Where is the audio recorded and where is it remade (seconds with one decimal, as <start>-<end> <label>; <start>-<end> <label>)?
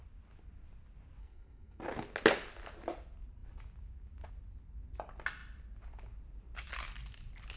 0.0-1.2 recorded; 1.2-1.8 remade; 1.8-7.6 recorded